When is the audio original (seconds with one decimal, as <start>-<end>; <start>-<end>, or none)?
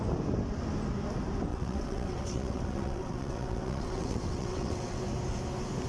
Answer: 0.0-1.5; 5.0-5.9